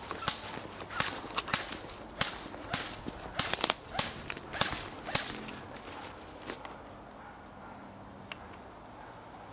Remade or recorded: recorded